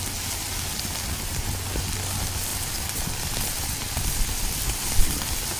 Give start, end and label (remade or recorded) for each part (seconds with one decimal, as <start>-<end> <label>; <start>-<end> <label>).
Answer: 0.0-5.6 recorded